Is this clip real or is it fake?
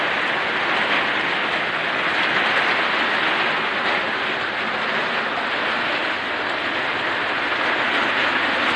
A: real